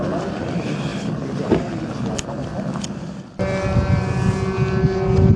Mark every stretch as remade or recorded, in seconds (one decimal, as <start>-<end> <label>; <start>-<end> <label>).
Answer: 0.0-5.4 recorded